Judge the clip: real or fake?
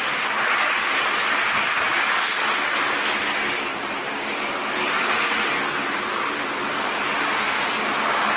real